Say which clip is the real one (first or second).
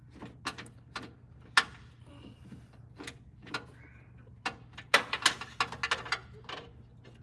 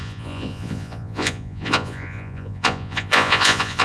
first